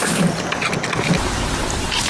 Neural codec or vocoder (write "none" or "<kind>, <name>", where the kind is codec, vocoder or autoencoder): none